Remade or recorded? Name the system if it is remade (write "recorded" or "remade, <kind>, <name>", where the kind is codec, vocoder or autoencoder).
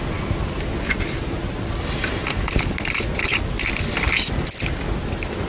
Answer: recorded